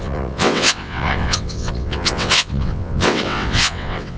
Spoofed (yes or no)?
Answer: yes